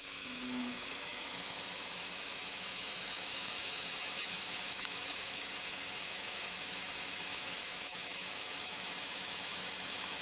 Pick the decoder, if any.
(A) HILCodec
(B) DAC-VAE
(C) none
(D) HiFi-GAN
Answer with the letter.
B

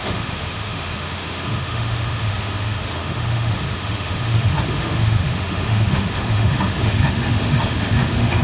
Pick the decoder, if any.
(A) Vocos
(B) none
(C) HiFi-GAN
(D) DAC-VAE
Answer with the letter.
D